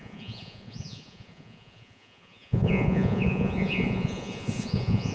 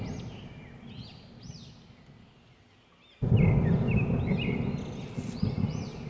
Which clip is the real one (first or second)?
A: second